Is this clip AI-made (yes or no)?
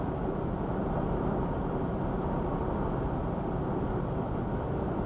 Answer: no